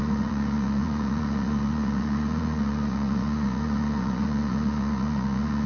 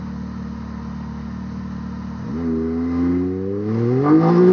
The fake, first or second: first